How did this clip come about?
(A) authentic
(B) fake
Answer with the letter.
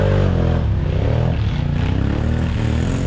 A